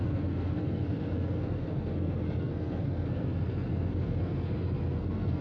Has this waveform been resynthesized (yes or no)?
yes